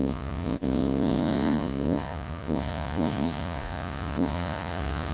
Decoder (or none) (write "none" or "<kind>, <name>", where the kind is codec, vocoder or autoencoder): vocoder, Vocos